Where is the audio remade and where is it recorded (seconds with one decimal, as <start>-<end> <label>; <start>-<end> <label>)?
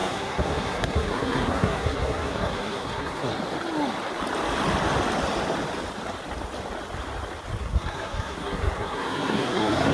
0.0-3.3 remade; 3.3-7.6 recorded; 7.6-9.9 remade